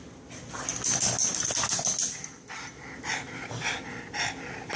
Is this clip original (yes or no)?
yes